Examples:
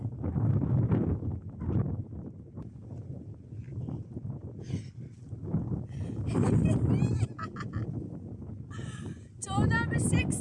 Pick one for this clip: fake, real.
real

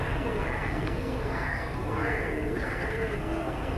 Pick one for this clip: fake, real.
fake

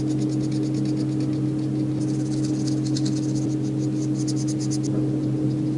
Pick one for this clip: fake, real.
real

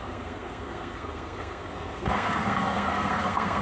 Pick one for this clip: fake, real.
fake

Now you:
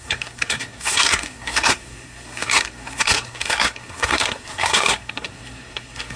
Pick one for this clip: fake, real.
fake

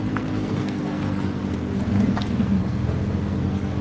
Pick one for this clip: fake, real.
fake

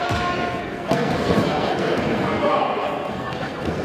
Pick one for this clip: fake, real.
fake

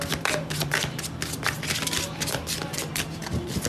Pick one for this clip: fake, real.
real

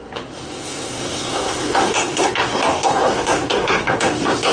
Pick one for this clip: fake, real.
fake